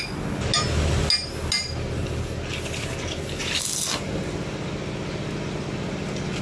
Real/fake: real